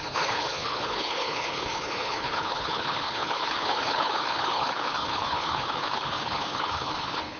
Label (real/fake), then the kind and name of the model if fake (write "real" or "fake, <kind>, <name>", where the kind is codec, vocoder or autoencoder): fake, codec, HILCodec